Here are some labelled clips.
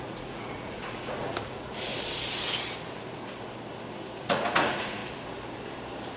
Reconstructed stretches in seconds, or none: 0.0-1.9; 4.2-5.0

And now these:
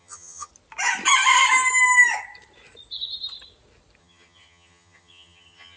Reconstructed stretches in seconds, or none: 0.0-0.5; 4.0-5.8

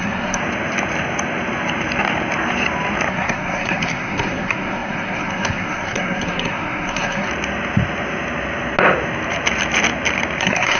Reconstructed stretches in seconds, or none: 0.0-0.4; 3.1-7.3; 10.4-10.8

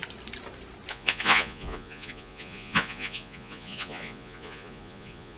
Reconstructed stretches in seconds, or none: 0.9-5.4

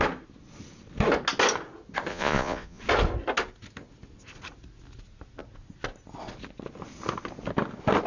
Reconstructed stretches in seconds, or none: 2.1-2.8

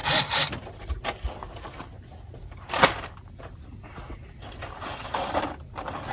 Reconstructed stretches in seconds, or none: none

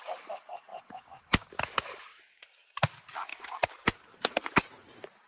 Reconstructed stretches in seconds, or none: 0.7-1.6; 2.1-2.8; 3.3-4.7

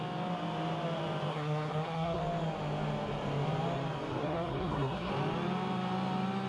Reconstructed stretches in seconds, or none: 1.3-2.2; 4.2-5.1